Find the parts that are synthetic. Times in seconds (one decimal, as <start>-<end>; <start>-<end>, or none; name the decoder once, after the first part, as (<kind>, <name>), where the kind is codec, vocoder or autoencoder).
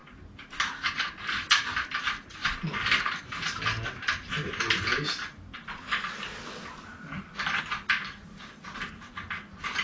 none